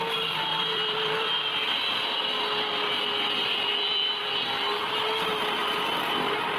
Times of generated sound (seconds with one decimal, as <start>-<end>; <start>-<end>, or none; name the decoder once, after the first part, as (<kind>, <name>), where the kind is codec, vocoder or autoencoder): 0.5-2.3 (vocoder, BigVGAN v2); 4.8-5.4